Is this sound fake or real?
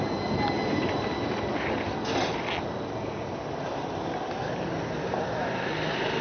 real